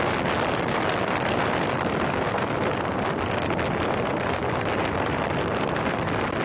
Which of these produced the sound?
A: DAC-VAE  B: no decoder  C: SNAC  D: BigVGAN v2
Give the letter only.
B